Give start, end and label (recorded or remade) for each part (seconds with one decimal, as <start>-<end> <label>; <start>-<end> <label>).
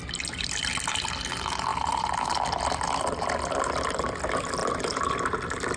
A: 0.0-5.8 recorded